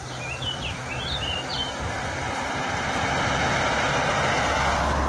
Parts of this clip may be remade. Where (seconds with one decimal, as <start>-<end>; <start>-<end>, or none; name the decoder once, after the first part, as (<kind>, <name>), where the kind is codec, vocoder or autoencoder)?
0.0-5.1 (vocoder, BigVGAN v2)